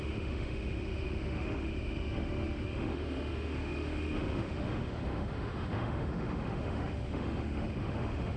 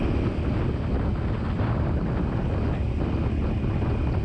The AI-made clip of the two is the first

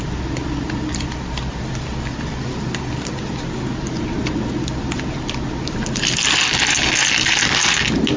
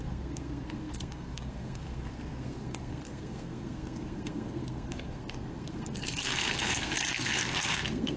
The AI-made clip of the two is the second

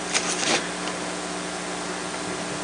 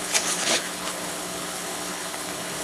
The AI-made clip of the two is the second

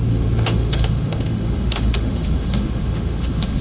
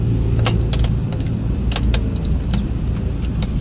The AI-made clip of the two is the first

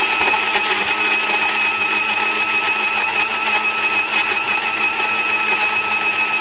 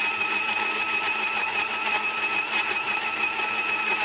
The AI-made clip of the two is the second